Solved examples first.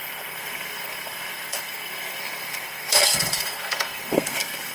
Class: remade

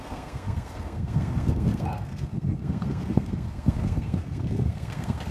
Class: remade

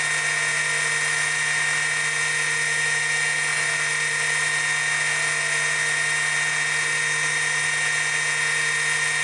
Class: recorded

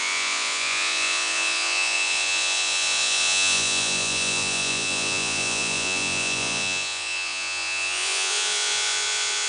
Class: remade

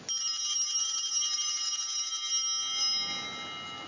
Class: recorded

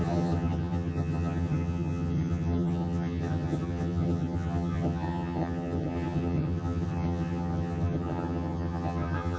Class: remade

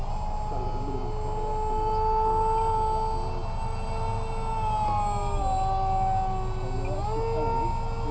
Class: recorded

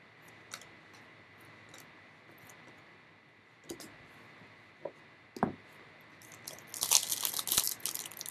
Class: recorded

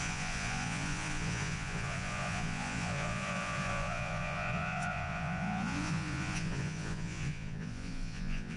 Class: remade